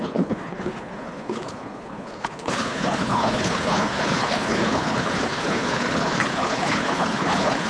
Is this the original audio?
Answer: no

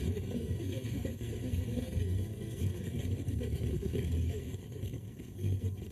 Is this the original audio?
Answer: no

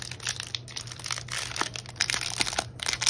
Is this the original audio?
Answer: yes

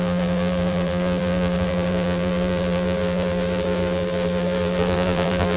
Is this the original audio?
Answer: no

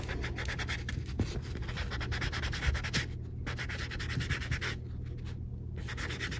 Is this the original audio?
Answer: yes